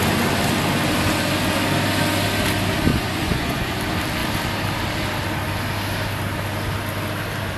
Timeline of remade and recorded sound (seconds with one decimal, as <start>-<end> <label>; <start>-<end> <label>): 0.0-2.9 recorded; 2.9-3.8 remade; 3.8-7.6 recorded

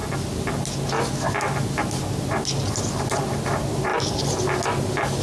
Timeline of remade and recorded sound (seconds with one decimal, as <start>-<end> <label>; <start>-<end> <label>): 0.0-5.2 recorded